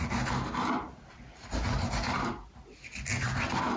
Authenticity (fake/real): real